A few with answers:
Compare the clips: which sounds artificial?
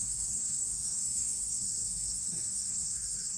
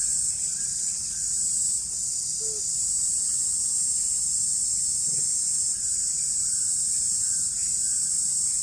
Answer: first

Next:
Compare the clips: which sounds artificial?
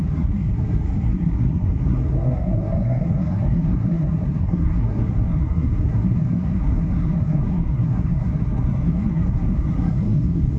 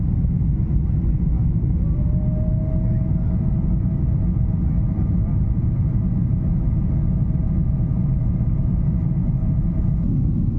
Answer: first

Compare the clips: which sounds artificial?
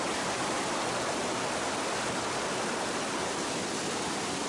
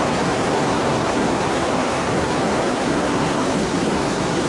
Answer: second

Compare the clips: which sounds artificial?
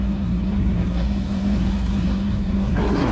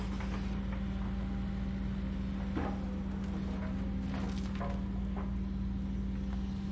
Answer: first